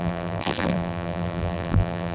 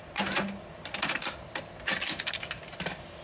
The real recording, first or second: second